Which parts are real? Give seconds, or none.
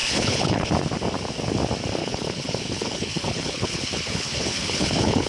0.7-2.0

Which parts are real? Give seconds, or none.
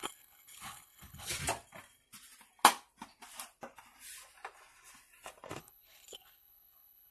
1.3-5.6